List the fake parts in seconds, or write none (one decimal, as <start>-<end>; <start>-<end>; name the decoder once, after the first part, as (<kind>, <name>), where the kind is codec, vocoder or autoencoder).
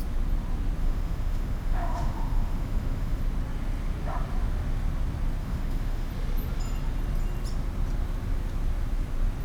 0.8-3.2 (autoencoder, DAC-VAE); 5.4-6.1